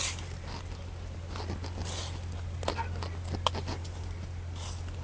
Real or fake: real